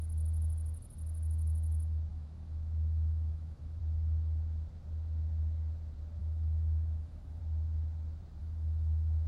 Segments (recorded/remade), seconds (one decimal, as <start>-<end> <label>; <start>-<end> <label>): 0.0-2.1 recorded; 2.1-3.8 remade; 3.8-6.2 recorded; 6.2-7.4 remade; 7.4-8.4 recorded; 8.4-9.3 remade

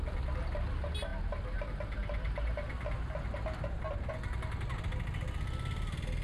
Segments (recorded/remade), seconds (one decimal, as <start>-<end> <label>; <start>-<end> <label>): 0.0-6.2 recorded

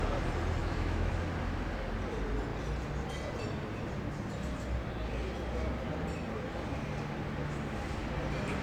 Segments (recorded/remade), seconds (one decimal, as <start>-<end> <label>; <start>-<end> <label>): 0.0-0.6 recorded; 0.6-1.1 remade; 1.1-8.6 recorded